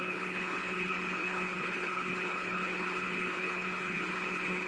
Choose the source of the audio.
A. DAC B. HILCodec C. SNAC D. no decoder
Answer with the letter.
B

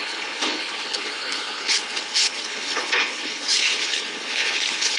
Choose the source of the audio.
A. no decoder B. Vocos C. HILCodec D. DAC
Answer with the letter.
C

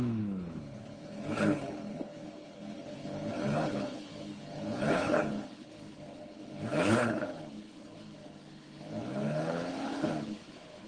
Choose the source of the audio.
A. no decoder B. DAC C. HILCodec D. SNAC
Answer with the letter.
C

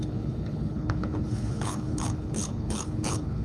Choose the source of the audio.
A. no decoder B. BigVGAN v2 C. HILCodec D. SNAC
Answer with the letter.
C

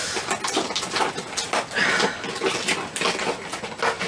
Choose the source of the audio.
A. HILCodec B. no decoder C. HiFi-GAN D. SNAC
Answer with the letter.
B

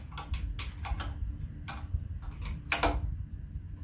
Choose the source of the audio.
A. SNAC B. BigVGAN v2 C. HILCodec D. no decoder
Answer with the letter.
D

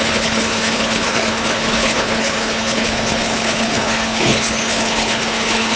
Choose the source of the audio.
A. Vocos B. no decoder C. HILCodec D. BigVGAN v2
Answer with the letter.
C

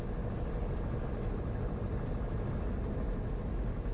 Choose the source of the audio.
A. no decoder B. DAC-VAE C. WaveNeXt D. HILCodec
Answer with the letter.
A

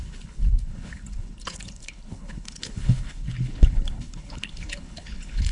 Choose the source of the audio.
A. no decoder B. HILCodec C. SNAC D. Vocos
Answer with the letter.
B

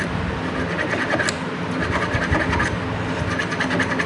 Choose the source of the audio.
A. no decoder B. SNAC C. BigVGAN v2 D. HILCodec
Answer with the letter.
A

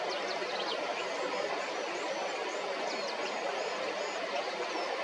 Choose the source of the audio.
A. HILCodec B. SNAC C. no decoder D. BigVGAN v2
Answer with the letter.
C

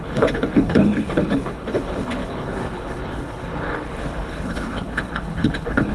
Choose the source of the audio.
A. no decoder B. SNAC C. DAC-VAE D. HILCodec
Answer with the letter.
D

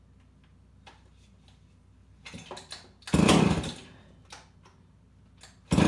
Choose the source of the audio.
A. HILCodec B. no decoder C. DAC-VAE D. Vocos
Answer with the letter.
B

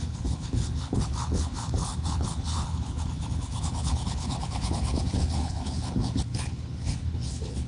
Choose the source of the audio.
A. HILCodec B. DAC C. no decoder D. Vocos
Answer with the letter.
A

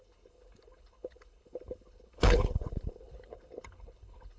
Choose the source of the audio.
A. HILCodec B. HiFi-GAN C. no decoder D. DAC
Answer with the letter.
A